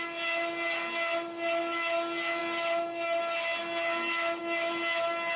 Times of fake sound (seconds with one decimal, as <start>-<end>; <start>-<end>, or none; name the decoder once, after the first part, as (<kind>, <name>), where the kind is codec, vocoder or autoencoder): none